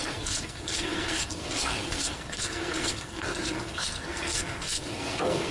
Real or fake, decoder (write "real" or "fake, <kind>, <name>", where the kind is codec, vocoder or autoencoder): fake, codec, SNAC